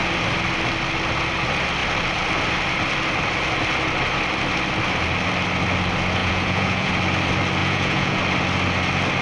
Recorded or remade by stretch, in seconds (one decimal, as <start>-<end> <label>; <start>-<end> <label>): 0.0-6.2 recorded; 6.2-6.9 remade; 6.9-7.6 recorded; 7.6-8.2 remade; 8.2-9.2 recorded